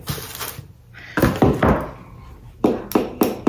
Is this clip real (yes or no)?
yes